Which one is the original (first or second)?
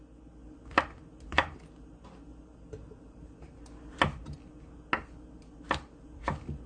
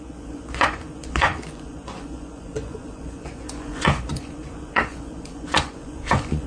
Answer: first